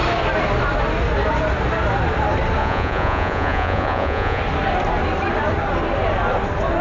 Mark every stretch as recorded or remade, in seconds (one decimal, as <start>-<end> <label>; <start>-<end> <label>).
0.0-2.6 recorded; 2.6-4.4 remade; 4.4-6.8 recorded